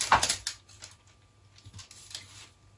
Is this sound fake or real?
real